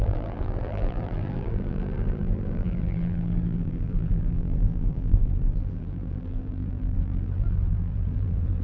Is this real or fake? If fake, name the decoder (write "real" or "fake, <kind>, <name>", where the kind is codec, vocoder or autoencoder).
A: fake, vocoder, BigVGAN v2